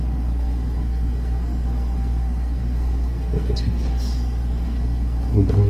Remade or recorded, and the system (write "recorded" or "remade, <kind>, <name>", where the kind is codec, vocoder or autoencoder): remade, codec, SNAC